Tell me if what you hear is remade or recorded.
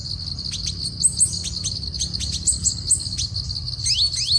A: recorded